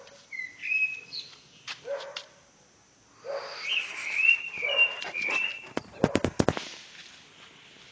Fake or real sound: real